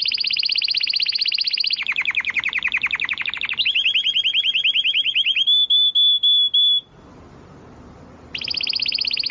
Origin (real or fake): real